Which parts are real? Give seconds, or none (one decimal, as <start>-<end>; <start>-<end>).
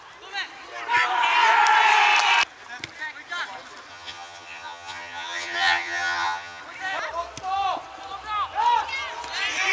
0.0-3.9; 6.6-9.7